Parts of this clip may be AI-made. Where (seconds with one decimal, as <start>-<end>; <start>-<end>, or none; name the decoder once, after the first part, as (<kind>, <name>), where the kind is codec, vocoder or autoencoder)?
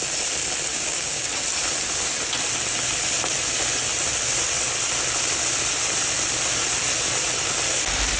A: 0.7-1.3 (codec, DAC)